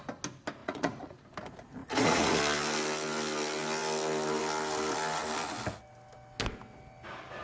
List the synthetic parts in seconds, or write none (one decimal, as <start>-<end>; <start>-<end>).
0.6-1.2; 1.8-2.4

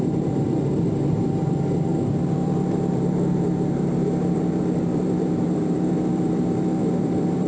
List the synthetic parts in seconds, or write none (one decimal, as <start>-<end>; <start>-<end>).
0.0-7.5